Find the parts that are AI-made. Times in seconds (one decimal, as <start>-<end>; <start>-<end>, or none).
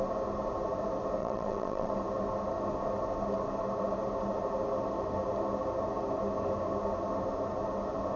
1.2-1.9